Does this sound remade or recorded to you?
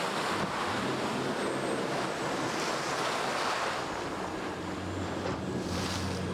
recorded